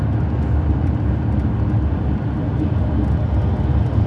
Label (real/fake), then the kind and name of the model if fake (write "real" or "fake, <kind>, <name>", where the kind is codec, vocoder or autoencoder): real